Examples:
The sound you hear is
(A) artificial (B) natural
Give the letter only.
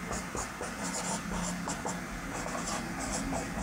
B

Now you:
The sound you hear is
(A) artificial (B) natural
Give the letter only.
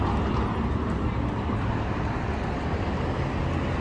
B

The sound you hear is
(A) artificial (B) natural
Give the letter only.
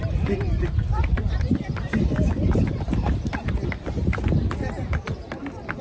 B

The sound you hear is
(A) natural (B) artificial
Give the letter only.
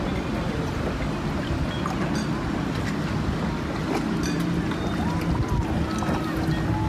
A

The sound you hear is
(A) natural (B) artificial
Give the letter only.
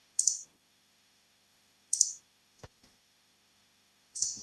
B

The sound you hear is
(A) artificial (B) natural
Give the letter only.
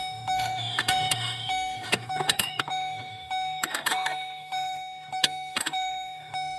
A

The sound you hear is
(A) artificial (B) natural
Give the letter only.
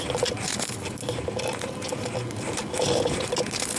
B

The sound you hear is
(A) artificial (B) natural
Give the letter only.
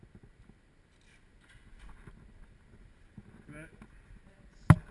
B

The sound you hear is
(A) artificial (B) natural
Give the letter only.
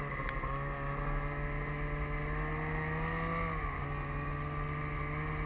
B